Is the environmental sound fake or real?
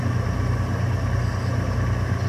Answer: real